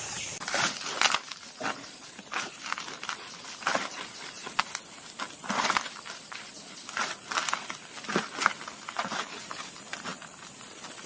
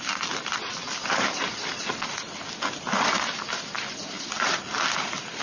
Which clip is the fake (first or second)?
first